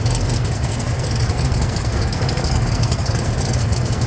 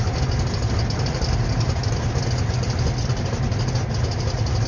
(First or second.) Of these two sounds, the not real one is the first